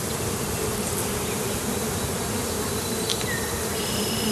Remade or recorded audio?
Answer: recorded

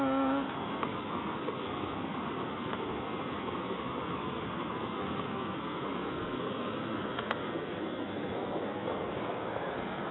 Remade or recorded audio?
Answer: remade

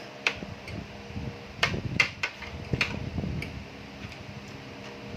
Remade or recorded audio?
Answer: remade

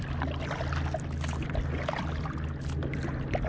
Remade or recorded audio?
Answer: recorded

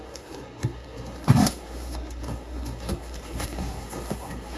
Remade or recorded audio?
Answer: remade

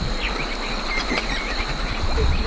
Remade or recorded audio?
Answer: recorded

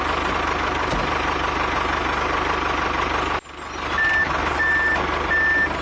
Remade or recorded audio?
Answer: recorded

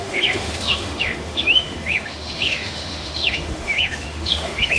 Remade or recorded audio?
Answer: remade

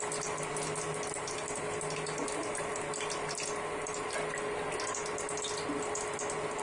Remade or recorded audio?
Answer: recorded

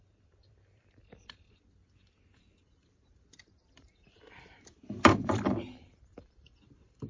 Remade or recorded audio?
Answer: remade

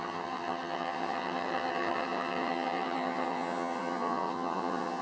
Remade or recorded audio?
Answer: remade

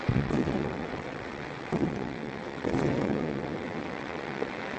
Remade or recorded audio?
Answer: remade